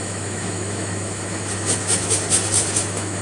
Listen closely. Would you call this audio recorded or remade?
remade